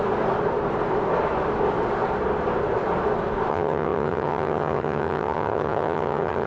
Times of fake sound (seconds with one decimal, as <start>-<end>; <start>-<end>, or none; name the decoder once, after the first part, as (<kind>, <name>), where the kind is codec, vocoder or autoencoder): 3.5-6.5 (vocoder, HiFi-GAN)